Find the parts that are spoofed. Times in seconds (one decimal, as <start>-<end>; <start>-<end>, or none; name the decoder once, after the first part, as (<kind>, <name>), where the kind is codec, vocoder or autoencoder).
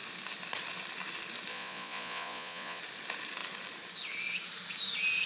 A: 1.5-2.8 (vocoder, Vocos)